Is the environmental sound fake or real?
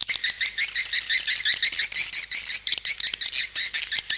real